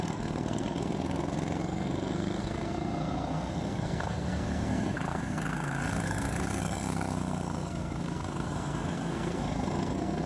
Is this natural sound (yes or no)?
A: no